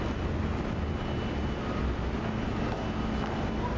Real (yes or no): yes